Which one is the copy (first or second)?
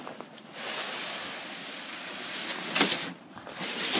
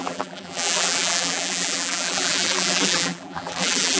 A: second